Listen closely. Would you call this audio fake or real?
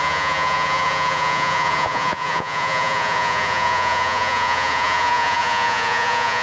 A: fake